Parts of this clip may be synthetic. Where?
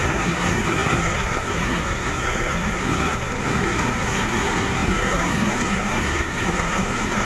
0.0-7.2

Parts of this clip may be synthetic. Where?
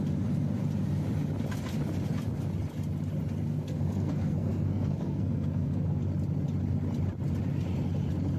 3.5-6.0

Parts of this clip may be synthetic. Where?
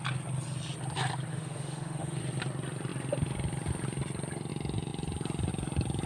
1.3-2.2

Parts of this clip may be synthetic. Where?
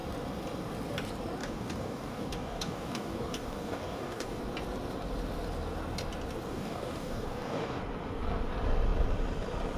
1.4-4.4; 6.5-7.8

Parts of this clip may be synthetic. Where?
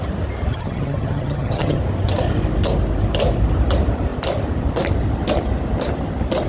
0.5-1.8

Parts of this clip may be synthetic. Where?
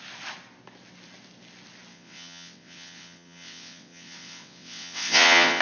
1.9-5.6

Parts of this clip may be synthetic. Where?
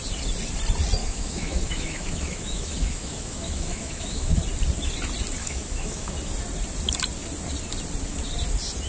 1.0-4.4; 5.4-6.1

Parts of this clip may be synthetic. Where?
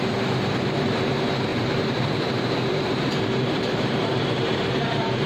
0.0-5.3